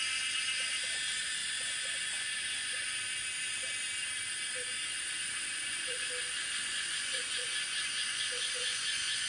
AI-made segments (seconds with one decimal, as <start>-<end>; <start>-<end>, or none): 1.4-3.0; 5.5-6.1; 6.6-9.3